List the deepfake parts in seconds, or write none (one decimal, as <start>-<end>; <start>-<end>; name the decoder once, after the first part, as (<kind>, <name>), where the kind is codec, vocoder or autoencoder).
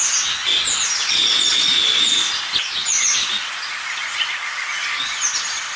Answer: none